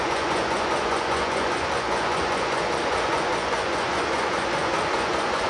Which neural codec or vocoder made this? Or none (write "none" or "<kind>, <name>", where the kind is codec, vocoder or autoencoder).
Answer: vocoder, Vocos